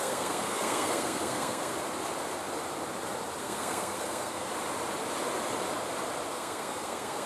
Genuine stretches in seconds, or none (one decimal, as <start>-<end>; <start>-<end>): 1.7-3.4; 4.5-6.3